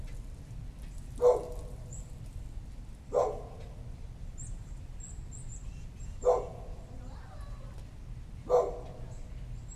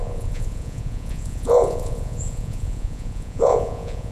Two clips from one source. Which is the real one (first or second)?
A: first